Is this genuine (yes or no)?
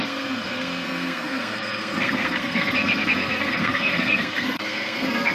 no